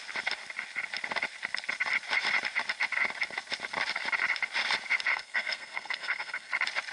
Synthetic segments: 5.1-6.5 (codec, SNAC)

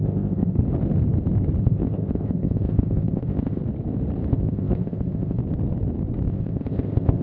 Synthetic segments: 0.0-0.6 (codec, ZipCodec); 1.6-3.6; 4.3-5.4; 6.3-7.2